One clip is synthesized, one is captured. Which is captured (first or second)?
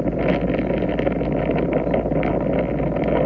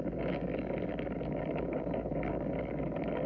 first